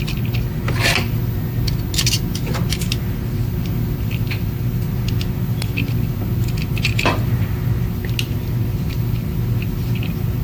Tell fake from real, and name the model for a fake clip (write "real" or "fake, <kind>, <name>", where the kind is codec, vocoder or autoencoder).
real